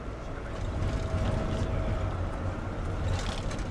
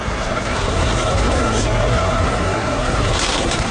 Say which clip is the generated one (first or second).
second